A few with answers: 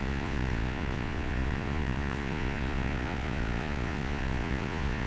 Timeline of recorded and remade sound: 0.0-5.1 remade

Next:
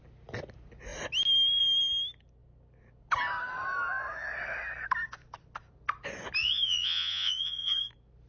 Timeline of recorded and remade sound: 0.0-6.4 recorded; 6.4-7.9 remade; 7.9-8.3 recorded

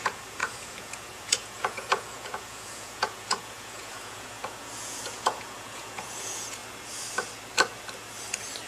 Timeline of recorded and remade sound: 0.0-6.6 remade; 6.6-8.7 recorded

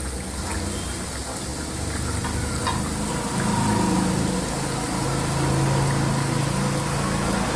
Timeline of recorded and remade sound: 0.0-7.6 recorded

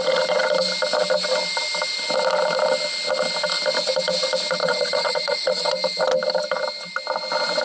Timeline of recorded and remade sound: 0.0-4.6 recorded; 4.6-5.7 remade; 5.7-7.6 recorded

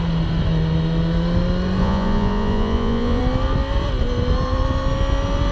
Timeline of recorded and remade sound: 0.0-1.8 recorded; 1.8-3.2 remade; 3.2-5.5 recorded

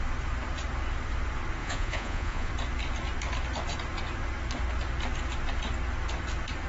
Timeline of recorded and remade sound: 0.0-1.6 recorded; 1.6-2.5 remade; 2.5-6.7 recorded